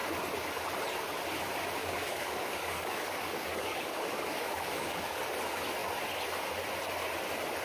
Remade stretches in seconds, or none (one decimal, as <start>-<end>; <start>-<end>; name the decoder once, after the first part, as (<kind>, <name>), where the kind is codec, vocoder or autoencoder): 1.8-5.2 (codec, DAC)